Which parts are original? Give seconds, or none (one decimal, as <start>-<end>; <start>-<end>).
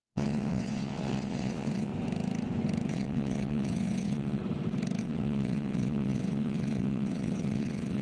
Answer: 1.9-2.9; 4.4-5.0